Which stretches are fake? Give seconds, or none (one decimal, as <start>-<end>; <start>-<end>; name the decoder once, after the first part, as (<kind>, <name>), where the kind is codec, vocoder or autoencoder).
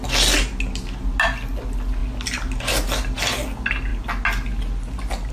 none